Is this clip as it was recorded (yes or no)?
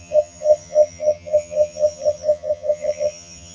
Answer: no